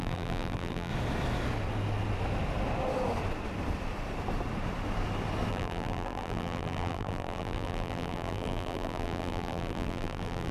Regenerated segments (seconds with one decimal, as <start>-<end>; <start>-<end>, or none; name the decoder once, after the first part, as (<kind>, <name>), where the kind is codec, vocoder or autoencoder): 0.0-0.9 (vocoder, BigVGAN v2); 5.5-10.5